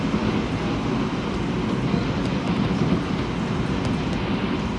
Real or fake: real